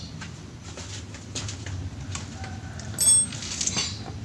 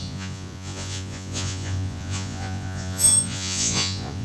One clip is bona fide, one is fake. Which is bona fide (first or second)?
first